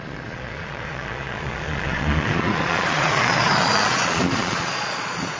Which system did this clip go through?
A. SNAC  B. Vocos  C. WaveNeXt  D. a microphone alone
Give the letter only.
B